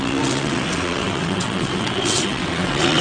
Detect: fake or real fake